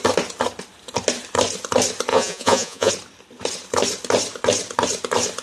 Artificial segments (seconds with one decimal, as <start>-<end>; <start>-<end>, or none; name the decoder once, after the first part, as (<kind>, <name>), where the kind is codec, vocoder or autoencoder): 2.1-2.9 (vocoder, Vocos)